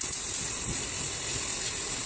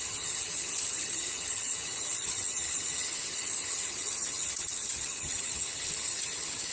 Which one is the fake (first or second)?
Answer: second